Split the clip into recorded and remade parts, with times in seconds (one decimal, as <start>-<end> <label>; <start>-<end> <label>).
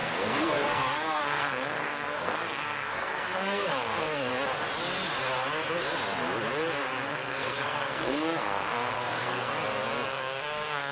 0.0-4.3 remade; 4.3-7.1 recorded; 7.1-9.5 remade; 9.5-10.1 recorded; 10.1-10.9 remade